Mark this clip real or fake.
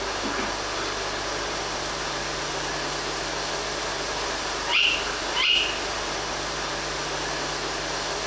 real